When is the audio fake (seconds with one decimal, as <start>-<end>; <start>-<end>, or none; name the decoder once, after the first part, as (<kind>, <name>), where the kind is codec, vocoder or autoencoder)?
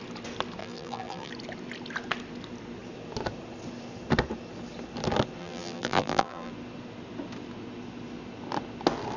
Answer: 0.6-1.3 (vocoder, BigVGAN v2); 5.4-6.5